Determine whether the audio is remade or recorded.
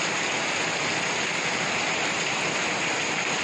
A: recorded